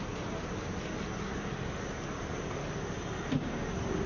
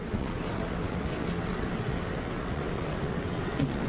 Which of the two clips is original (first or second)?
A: first